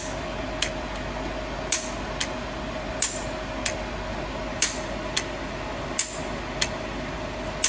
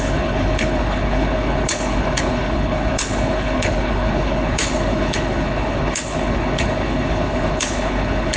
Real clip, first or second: first